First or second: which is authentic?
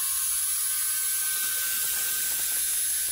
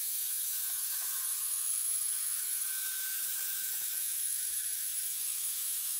first